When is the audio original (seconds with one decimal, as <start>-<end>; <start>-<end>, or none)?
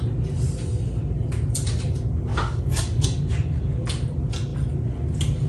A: 0.0-2.3; 3.3-5.5